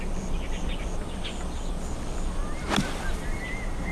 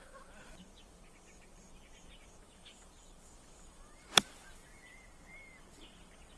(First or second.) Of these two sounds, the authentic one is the first